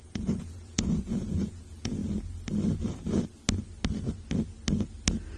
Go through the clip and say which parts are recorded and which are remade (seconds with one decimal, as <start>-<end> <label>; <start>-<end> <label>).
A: 0.0-2.0 remade; 2.0-5.4 recorded